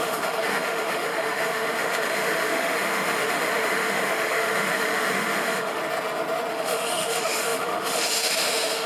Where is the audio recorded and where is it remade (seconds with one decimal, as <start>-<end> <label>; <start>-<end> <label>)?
0.0-5.8 remade; 5.8-6.5 recorded; 6.5-8.9 remade